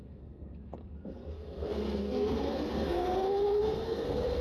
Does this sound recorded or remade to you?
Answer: remade